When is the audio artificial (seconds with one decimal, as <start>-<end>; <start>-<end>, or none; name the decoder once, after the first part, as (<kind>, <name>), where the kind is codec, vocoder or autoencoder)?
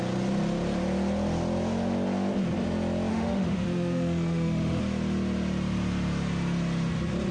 3.1-4.8 (autoencoder, DAC-VAE)